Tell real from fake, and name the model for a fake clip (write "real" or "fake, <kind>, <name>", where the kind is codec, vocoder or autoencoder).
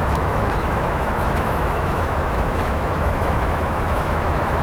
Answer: fake, autoencoder, DAC-VAE